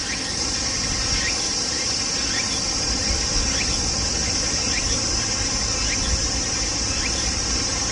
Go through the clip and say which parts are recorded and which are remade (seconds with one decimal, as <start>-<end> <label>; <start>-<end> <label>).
0.0-0.8 recorded; 0.8-4.2 remade; 4.2-6.9 recorded; 6.9-7.9 remade